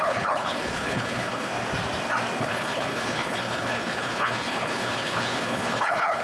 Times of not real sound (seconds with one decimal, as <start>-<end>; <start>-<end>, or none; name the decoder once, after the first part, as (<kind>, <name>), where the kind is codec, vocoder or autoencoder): 0.0-1.5 (codec, HILCodec); 2.4-6.2